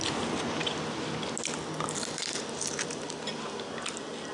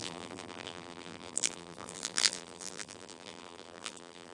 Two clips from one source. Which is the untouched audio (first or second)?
first